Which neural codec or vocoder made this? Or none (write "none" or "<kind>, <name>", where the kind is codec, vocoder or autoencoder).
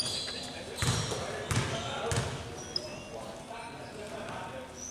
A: none